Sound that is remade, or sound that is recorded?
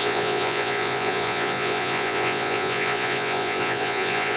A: remade